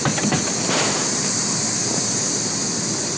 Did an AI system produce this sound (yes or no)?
no